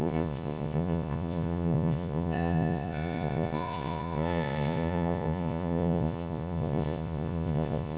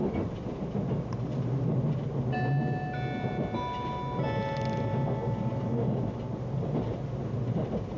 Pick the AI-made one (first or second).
first